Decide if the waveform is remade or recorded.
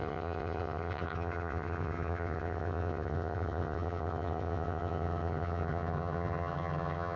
remade